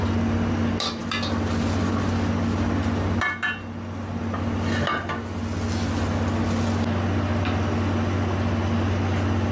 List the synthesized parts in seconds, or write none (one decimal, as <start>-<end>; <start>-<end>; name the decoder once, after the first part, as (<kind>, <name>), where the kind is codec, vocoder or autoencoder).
none